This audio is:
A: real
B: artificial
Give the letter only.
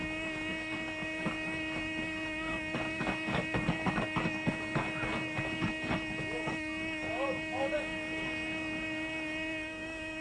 B